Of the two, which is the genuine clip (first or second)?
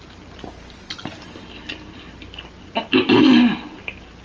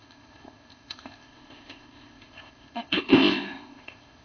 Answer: first